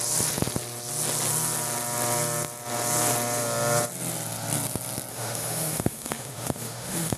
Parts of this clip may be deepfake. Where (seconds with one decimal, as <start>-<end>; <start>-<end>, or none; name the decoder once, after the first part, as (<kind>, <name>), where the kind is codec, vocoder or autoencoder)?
5.1-7.2 (autoencoder, DAC-VAE)